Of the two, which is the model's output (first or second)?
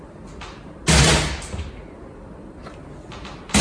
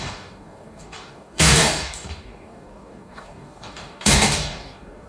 second